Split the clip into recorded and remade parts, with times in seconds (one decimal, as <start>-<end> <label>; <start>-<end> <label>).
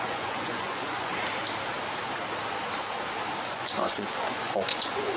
0.0-1.1 remade; 1.1-3.4 recorded; 3.4-5.2 remade